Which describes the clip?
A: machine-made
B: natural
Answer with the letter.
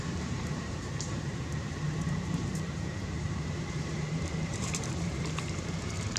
A